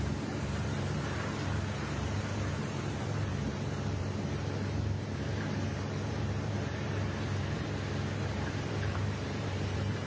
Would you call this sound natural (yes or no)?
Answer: no